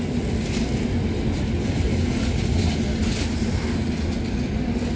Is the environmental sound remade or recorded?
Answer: recorded